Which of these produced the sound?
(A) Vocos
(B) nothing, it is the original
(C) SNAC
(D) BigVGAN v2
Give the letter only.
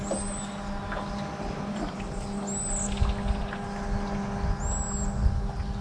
B